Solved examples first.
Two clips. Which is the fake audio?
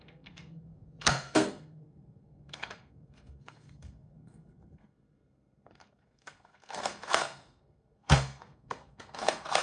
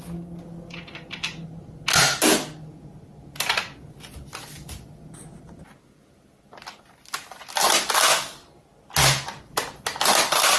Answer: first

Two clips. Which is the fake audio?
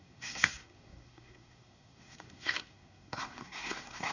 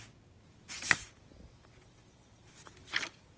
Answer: first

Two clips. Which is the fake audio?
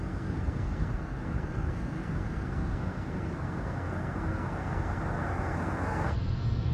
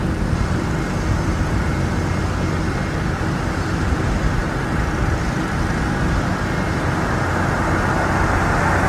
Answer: first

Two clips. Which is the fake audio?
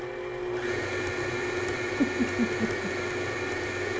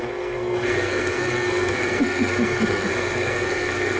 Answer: second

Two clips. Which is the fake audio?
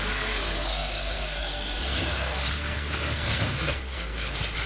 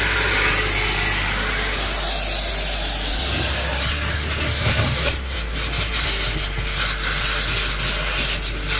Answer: first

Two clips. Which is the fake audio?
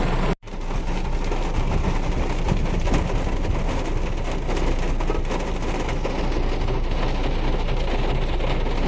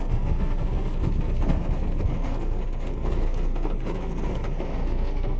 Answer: second